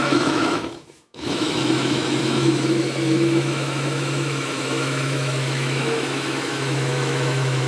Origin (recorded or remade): remade